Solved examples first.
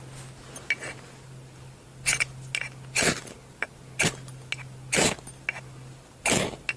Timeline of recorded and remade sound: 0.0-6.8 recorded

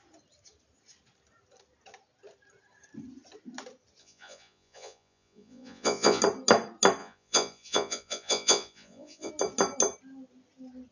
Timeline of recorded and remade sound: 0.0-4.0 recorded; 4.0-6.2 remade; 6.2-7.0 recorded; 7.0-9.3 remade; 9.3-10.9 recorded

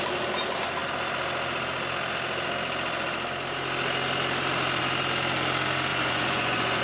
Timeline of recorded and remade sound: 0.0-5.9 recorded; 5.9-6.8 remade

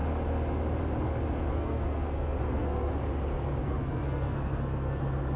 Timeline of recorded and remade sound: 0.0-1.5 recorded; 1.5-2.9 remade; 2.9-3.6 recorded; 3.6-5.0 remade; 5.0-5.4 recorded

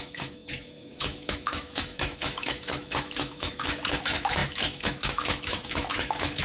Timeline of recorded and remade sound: 0.0-6.4 remade